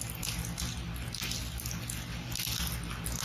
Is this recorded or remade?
recorded